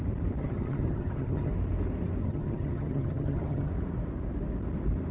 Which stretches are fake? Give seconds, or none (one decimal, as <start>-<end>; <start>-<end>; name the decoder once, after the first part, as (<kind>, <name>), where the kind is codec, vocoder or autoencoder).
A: 0.4-1.5 (vocoder, HiFi-GAN); 2.2-3.7